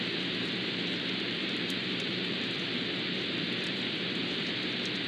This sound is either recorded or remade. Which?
remade